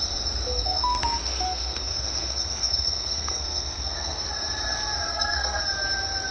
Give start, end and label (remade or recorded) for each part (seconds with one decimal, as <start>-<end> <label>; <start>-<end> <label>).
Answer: 0.0-0.5 recorded; 0.5-4.3 remade; 4.3-5.1 recorded; 5.1-5.6 remade; 5.6-6.3 recorded